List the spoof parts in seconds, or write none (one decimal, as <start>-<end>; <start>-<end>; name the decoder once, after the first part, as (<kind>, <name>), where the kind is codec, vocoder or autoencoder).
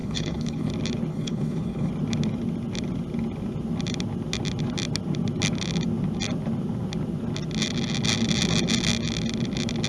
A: 0.0-0.7 (codec, HILCodec); 1.1-1.9